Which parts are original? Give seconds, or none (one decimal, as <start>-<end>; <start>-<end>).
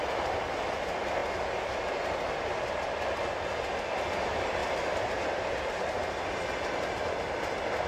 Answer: 0.0-7.9